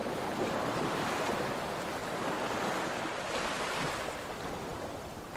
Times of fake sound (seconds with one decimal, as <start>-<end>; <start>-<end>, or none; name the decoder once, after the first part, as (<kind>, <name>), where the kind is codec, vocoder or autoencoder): 0.0-1.2 (vocoder, BigVGAN v2)